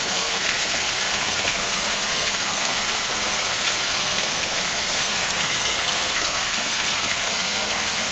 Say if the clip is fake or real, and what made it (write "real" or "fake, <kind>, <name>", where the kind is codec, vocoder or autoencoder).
fake, codec, SNAC